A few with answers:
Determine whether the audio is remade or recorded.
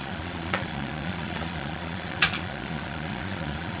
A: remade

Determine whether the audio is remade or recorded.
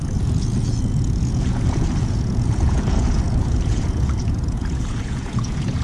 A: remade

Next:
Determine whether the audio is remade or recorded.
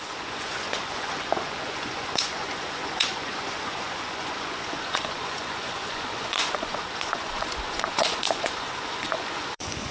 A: remade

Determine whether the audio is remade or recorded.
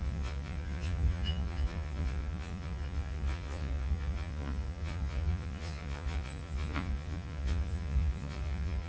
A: remade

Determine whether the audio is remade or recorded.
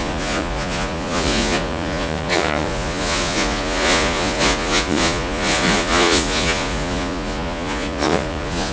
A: remade